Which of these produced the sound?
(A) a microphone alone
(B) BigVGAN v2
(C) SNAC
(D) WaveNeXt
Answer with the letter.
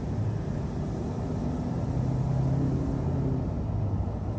A